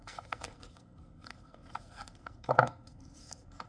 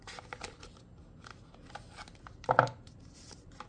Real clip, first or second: second